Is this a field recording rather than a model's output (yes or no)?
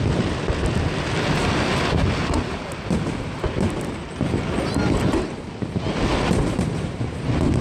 yes